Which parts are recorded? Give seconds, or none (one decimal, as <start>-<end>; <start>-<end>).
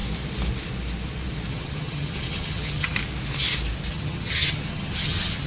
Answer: 0.0-1.5; 3.0-3.9